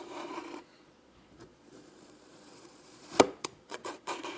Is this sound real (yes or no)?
no